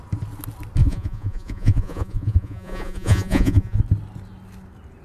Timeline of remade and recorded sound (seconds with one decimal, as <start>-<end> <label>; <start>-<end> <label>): 0.0-0.8 recorded; 0.8-3.8 remade; 3.8-5.0 recorded